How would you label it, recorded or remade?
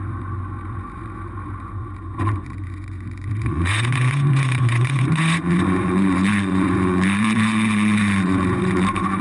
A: remade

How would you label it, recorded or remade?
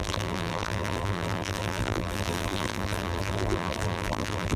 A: remade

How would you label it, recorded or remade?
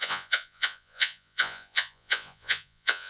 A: remade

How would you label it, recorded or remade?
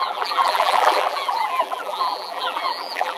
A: remade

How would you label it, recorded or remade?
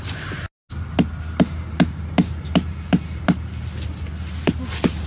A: recorded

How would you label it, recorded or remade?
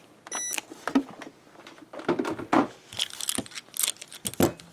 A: recorded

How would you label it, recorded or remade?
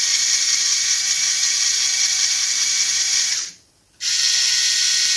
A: recorded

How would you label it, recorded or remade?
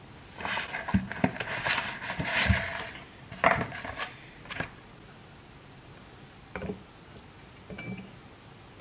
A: recorded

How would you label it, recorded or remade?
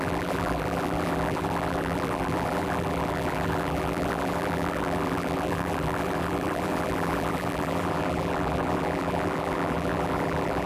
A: remade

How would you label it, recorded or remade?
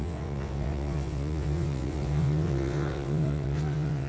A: remade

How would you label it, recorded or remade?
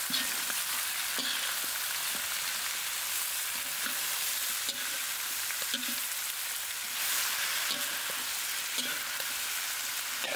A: recorded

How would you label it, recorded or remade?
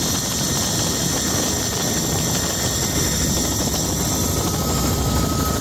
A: recorded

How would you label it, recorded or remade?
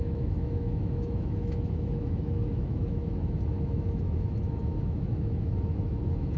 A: remade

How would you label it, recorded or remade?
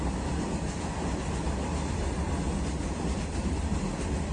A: recorded